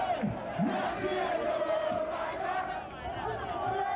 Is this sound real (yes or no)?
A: yes